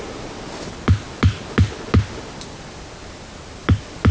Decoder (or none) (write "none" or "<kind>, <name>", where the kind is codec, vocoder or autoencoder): none